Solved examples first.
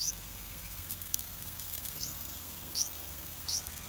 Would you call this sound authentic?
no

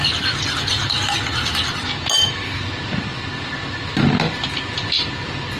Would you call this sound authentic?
yes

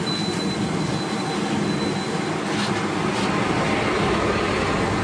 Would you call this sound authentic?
yes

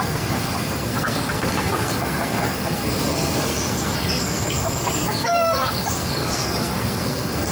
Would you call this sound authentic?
no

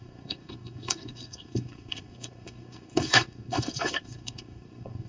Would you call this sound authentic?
no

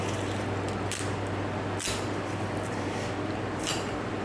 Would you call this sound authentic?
yes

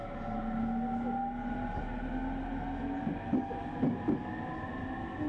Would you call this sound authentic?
yes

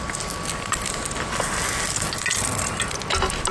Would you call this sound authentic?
yes